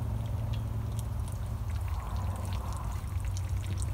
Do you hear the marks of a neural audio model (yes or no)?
no